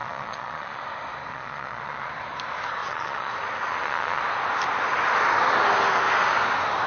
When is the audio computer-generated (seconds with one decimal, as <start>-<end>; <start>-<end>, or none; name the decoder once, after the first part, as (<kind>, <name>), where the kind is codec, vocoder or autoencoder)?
0.0-0.8 (vocoder, Vocos); 1.3-2.1; 2.8-3.3; 3.7-4.2